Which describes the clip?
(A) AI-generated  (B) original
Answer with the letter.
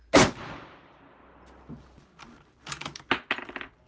B